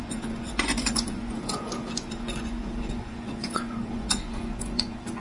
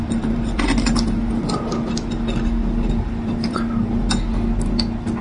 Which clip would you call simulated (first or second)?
first